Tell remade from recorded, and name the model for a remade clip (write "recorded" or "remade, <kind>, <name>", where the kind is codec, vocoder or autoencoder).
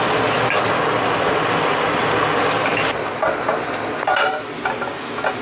recorded